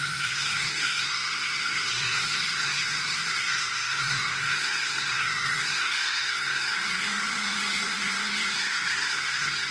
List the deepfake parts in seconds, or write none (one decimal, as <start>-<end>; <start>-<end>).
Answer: 0.0-9.7